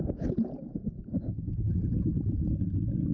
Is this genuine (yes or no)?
yes